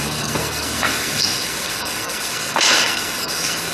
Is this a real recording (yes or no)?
no